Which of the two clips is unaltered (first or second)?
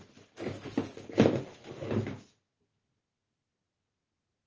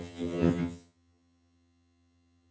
first